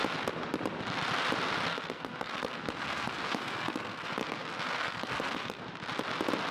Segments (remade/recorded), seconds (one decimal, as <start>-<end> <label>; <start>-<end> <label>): 0.0-1.7 recorded; 1.7-5.6 remade; 5.6-6.5 recorded